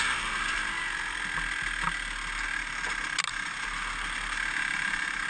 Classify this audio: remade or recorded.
recorded